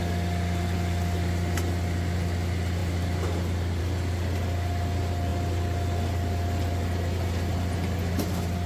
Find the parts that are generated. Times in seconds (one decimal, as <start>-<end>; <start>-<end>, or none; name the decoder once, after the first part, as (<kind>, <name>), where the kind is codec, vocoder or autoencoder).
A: none